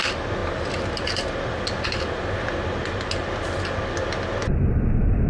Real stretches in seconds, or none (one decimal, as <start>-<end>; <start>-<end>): 0.0-5.3